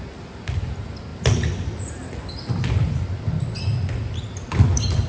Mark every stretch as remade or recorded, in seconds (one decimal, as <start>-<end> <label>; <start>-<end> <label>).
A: 0.0-5.1 recorded

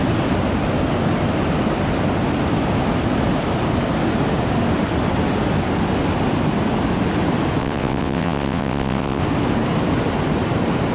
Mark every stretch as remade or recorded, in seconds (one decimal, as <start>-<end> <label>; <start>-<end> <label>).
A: 0.0-7.6 recorded; 7.6-9.2 remade; 9.2-10.9 recorded